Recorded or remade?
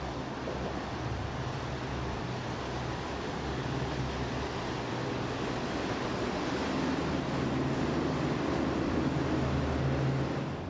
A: remade